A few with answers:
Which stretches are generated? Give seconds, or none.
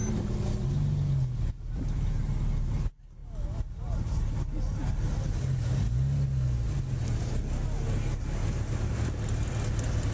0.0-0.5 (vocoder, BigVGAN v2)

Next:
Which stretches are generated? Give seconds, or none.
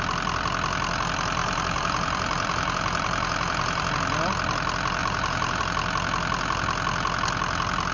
1.4-3.9 (vocoder, BigVGAN v2); 5.0-5.6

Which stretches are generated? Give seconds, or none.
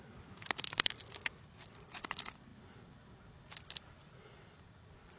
0.0-1.0 (vocoder, BigVGAN v2); 1.6-2.5; 4.6-5.2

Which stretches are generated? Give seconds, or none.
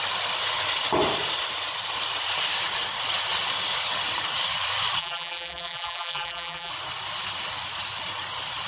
5.0-6.7 (vocoder, BigVGAN v2)